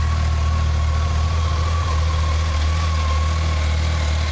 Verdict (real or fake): real